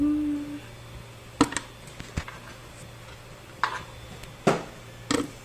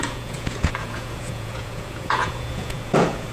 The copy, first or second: second